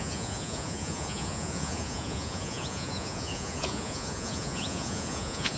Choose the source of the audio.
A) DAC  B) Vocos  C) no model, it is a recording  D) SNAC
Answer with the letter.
B